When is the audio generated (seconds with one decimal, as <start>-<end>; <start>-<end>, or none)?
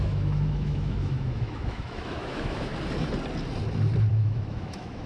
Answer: 0.0-2.7; 4.1-5.1